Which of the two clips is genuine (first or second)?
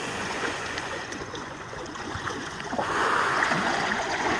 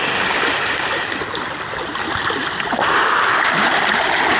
second